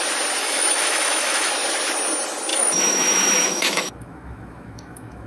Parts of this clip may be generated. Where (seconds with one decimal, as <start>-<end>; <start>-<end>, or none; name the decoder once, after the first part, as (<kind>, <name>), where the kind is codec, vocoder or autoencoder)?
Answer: 0.4-1.5 (autoencoder, DAC-VAE); 2.5-5.3